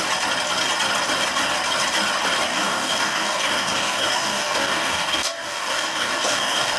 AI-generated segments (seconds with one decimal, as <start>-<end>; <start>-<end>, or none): 2.5-6.8